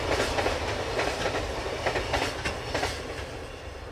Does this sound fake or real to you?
real